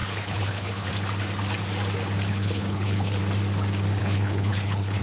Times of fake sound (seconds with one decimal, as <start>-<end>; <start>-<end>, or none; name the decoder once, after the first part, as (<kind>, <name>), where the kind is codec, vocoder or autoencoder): 0.0-0.9 (codec, HILCodec); 2.3-3.2; 4.0-5.0